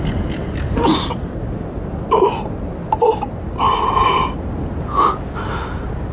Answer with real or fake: real